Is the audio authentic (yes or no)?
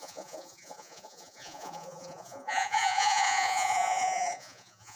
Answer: no